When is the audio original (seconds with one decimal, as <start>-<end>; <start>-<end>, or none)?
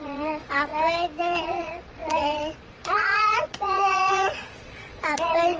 0.7-1.2